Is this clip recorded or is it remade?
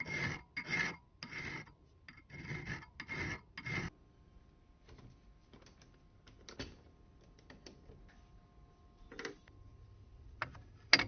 recorded